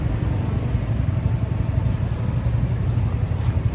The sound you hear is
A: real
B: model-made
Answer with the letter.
A